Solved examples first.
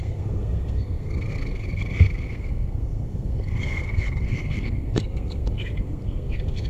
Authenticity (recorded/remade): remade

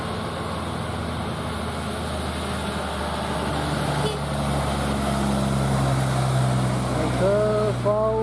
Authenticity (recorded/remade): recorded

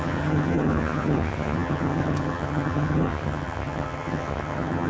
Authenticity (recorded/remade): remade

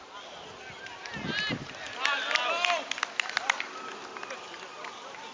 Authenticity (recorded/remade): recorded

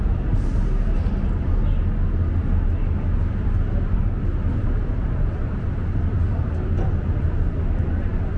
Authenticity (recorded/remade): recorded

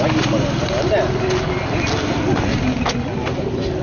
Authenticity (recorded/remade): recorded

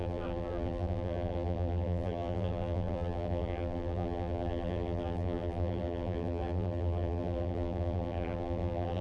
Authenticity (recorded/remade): remade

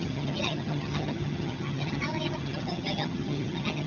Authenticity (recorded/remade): remade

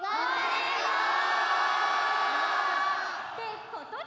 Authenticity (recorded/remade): recorded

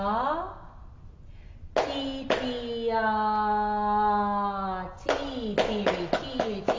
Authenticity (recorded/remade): recorded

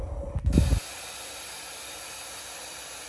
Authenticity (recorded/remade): recorded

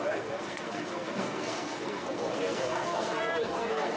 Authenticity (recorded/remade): remade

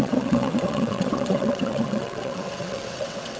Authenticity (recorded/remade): remade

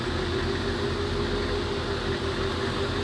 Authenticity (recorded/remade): recorded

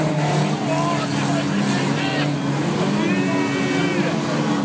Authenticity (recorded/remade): recorded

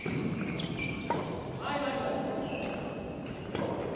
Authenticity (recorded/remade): recorded